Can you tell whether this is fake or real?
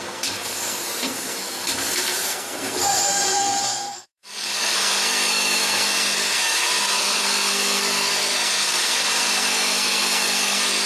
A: fake